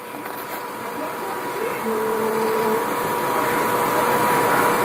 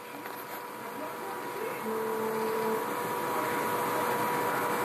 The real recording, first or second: second